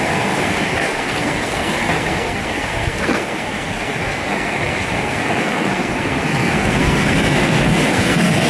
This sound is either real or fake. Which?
fake